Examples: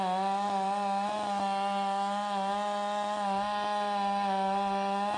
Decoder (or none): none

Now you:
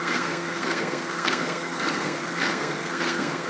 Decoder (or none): codec, SNAC